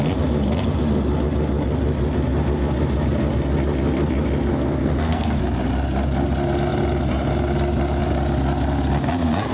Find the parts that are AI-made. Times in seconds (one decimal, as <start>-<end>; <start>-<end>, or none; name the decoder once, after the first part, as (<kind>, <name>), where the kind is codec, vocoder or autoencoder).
4.5-5.4 (codec, SNAC)

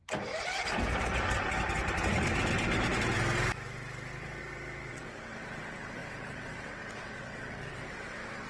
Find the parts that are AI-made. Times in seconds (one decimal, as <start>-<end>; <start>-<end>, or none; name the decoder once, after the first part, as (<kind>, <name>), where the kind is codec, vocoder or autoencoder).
4.9-8.5 (vocoder, WaveNeXt)

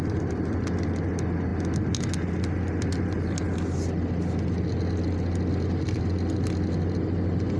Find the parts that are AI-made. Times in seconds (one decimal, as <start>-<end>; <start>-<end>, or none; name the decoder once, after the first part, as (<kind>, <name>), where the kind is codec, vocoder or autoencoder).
none